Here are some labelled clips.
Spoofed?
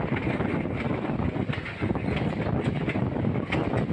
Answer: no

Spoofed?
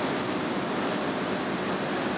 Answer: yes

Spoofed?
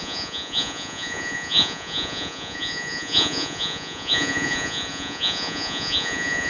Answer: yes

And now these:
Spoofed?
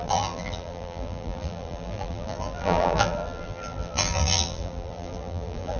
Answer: yes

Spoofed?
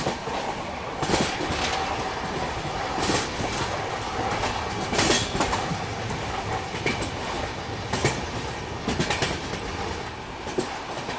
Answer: no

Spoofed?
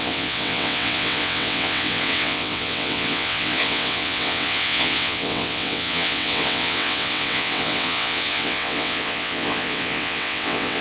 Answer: yes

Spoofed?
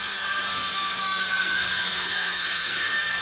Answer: yes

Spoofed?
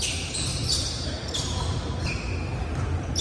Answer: no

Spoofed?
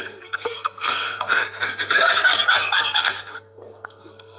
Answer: yes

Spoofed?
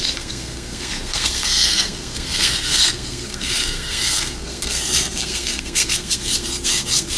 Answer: yes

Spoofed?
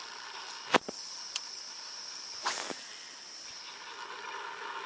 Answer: no